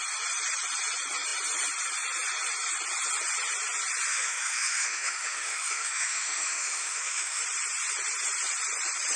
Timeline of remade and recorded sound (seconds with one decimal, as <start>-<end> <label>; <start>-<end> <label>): 0.0-4.1 recorded; 4.1-7.4 remade; 7.4-9.2 recorded